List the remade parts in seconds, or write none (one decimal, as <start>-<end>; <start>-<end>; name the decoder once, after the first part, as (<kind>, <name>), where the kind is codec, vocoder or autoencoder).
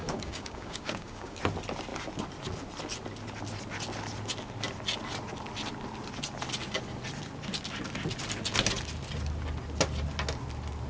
0.0-1.4 (codec, DAC)